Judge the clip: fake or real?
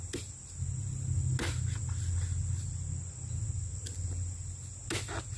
real